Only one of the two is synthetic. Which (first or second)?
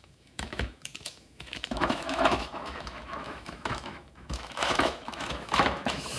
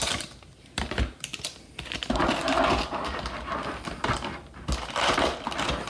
first